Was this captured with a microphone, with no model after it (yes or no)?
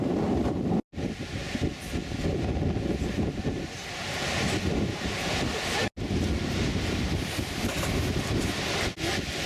yes